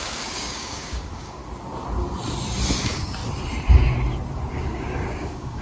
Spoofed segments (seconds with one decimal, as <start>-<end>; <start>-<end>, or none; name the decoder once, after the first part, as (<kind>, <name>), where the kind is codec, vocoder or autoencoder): 0.0-1.4 (codec, DAC); 2.8-3.2; 4.5-5.6